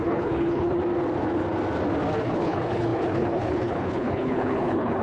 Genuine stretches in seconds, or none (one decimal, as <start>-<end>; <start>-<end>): 0.8-2.2